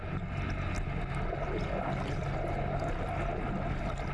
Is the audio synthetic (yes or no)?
no